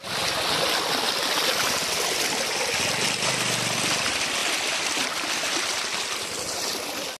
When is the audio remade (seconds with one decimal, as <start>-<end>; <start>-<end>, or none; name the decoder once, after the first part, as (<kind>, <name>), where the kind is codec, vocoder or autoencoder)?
none